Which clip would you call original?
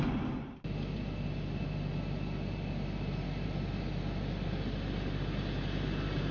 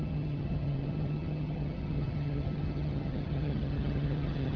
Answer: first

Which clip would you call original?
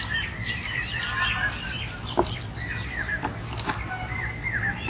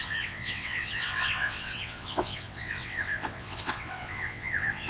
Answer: first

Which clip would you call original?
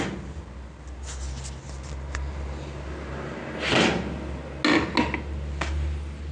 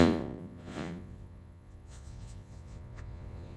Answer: first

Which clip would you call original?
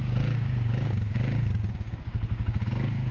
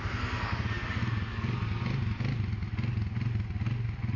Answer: second